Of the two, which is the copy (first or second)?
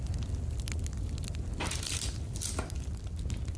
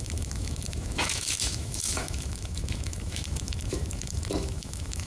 second